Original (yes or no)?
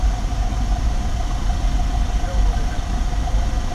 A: yes